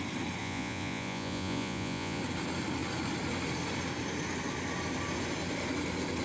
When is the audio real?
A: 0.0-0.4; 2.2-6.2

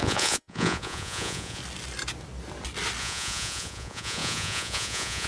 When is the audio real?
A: 1.6-3.0

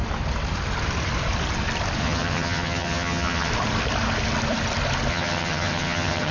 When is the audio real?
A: 0.0-2.0; 3.5-5.1

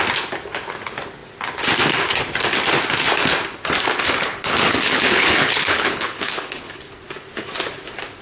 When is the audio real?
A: 0.0-4.2; 7.0-8.2

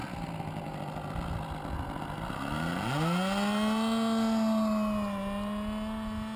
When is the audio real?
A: 0.0-6.4

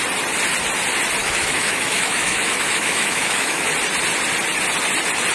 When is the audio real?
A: 0.0-1.2; 3.7-5.3

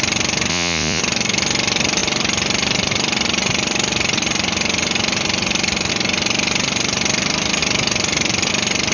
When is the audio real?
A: 0.0-0.5; 1.0-8.9

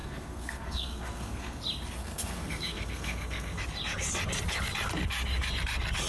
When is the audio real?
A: 1.6-2.0; 3.6-6.1